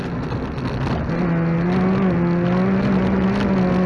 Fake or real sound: real